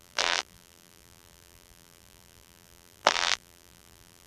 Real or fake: fake